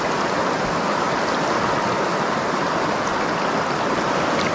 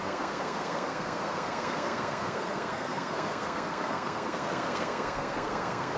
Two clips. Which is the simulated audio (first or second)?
second